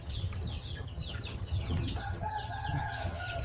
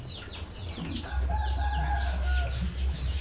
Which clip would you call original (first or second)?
second